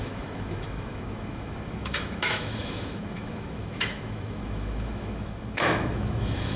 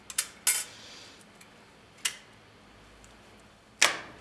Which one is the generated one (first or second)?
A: first